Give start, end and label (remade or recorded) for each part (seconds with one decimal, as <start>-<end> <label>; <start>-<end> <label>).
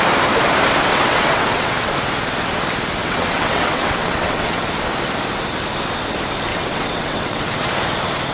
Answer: 0.0-0.9 recorded; 0.9-1.9 remade; 1.9-3.0 recorded; 3.0-4.6 remade; 4.6-6.5 recorded; 6.5-7.7 remade; 7.7-8.3 recorded